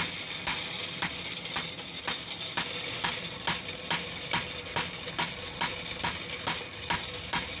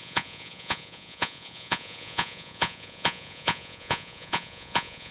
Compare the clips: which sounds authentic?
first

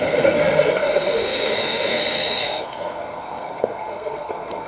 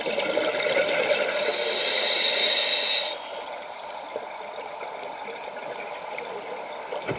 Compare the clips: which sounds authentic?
second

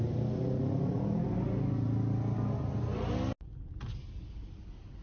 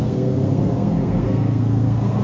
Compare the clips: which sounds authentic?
first